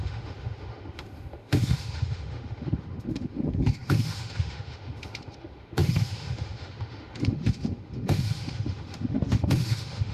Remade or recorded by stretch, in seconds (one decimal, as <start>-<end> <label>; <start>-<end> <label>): 0.0-10.1 remade